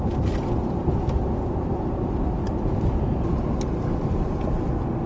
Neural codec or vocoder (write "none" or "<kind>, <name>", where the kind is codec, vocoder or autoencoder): none